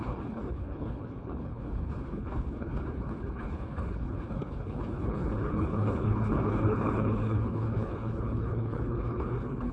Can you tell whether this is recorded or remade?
remade